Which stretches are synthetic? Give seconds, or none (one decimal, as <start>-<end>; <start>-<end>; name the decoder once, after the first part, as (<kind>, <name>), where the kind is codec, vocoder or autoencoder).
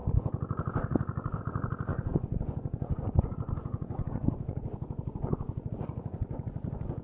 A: 1.9-5.7 (vocoder, Vocos)